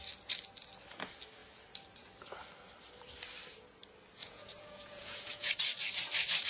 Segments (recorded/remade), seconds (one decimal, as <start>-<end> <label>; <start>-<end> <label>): 0.0-4.2 recorded; 4.2-5.5 remade; 5.5-6.5 recorded